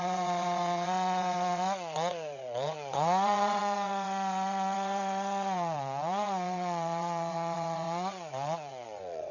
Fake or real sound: fake